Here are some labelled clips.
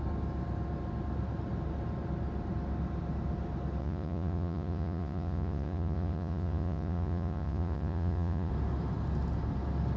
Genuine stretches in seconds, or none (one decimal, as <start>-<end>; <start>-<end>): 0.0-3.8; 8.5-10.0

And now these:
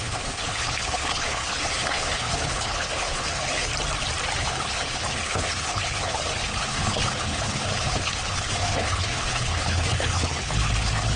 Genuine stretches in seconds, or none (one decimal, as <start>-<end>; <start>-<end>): 3.7-4.4

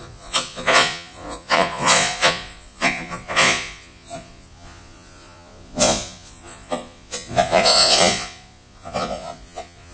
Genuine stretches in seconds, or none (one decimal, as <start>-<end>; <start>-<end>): none

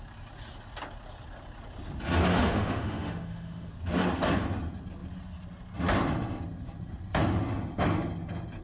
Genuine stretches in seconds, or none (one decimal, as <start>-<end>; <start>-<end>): 0.0-2.3; 3.7-8.6

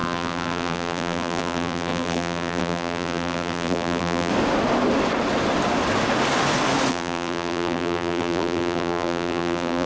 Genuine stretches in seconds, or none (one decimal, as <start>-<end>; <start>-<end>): 4.3-6.9